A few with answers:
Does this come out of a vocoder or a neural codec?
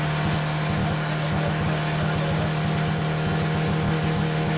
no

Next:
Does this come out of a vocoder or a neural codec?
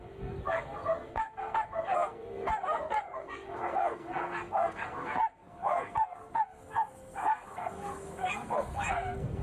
yes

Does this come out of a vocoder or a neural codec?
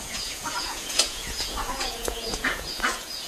yes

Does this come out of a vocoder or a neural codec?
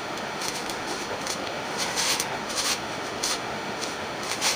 yes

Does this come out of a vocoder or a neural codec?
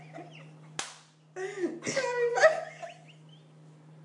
no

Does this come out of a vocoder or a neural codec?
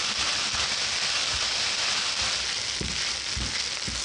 no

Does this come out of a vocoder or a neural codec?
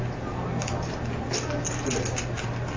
no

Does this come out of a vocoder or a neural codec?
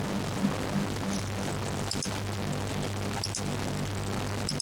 no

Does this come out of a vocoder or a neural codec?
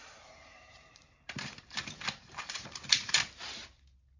yes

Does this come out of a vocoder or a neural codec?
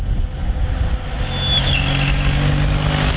no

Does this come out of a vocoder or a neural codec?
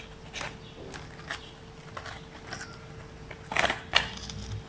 no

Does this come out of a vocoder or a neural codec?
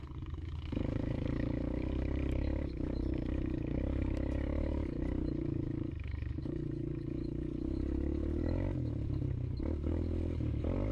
yes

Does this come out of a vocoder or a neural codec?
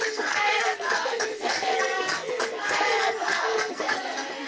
yes